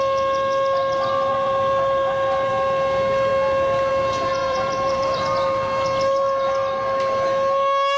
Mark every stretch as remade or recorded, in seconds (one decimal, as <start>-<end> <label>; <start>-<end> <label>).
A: 0.0-1.3 recorded; 1.3-2.5 remade; 2.5-4.4 recorded; 4.4-5.2 remade; 5.2-8.0 recorded